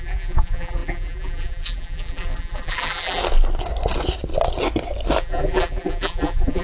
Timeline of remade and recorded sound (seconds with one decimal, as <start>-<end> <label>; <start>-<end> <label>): 0.0-3.2 remade; 3.2-5.2 recorded; 5.2-6.6 remade